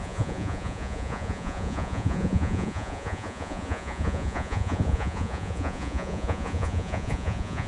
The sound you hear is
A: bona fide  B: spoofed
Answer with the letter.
B